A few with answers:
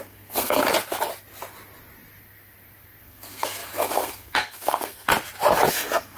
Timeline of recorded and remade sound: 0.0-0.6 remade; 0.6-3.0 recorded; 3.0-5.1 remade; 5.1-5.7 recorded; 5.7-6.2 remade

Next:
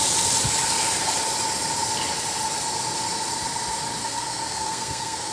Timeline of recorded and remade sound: 0.0-4.0 recorded; 4.0-5.3 remade

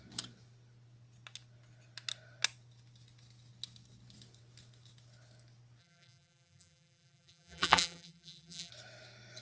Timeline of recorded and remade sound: 0.0-5.8 recorded; 5.8-8.7 remade; 8.7-9.4 recorded

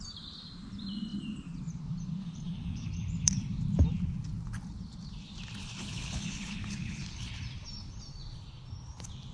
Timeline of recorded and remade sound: 0.0-2.2 recorded; 2.2-2.9 remade; 2.9-5.6 recorded; 5.6-7.3 remade; 7.3-9.3 recorded

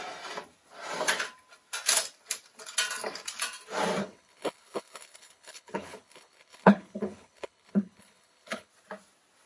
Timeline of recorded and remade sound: 0.0-4.0 recorded; 4.0-8.7 remade; 8.7-9.5 recorded

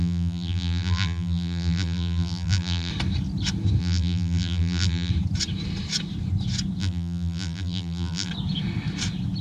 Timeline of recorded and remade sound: 0.0-2.9 remade; 2.9-3.8 recorded; 3.8-5.1 remade; 5.1-6.8 recorded; 6.8-8.3 remade; 8.3-9.4 recorded